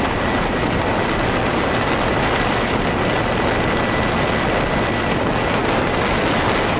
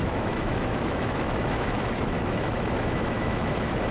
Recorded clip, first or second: first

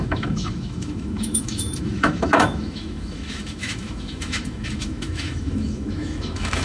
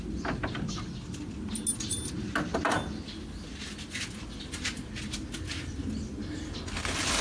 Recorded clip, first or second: second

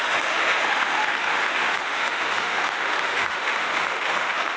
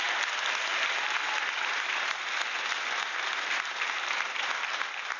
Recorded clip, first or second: second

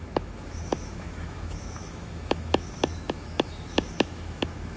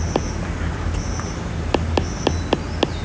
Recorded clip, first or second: second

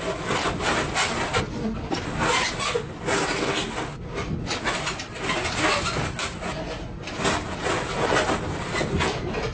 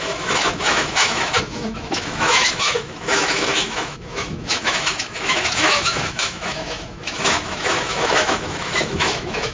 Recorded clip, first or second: first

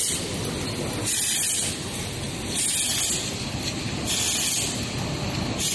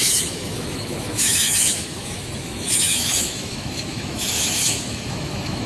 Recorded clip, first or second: first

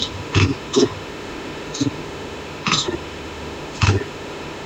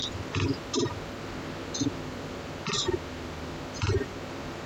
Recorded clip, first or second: second